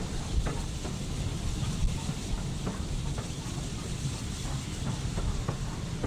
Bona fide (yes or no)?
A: yes